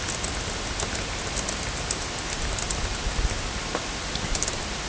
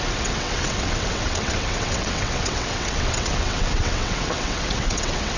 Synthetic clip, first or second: second